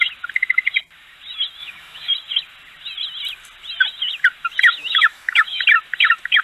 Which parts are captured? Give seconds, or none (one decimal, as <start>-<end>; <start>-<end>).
0.0-1.6; 2.1-4.8; 5.6-6.4